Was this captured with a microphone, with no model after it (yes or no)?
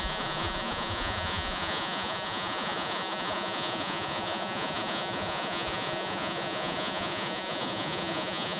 no